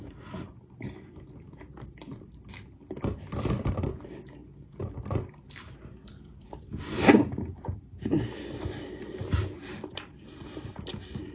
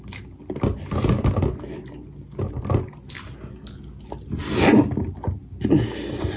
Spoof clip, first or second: first